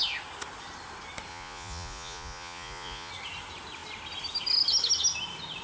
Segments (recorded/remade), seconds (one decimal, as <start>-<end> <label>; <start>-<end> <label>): 0.0-1.3 recorded; 1.3-3.1 remade; 3.1-5.6 recorded